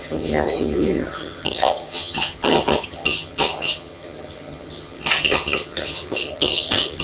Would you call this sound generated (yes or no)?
yes